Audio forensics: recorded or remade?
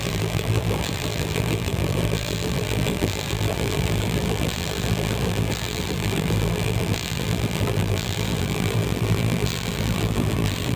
remade